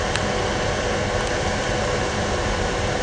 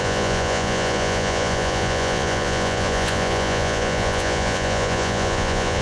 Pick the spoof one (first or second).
second